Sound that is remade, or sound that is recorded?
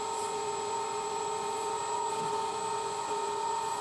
remade